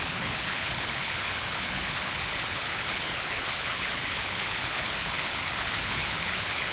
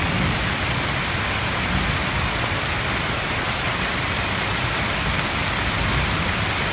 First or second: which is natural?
second